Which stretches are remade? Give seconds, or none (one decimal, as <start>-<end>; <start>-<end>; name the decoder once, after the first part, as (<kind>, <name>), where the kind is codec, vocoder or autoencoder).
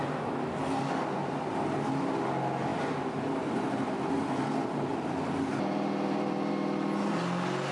2.7-4.4 (vocoder, BigVGAN v2); 4.9-6.5